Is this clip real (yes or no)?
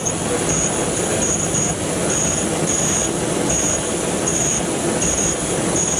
yes